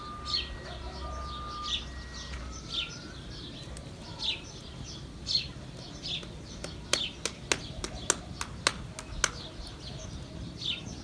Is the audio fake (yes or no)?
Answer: no